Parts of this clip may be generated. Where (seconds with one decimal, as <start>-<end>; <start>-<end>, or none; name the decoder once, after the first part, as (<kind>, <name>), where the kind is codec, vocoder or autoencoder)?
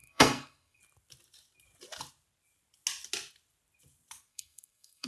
0.0-0.8 (codec, SNAC); 4.3-5.1